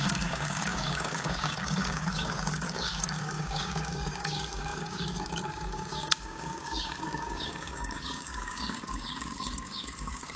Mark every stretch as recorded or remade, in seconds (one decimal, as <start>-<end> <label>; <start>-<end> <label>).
0.0-10.4 remade